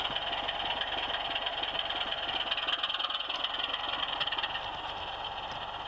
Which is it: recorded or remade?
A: recorded